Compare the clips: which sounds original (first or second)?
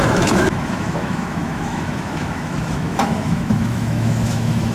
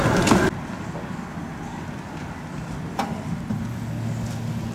second